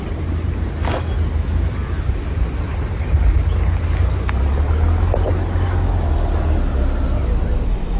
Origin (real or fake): real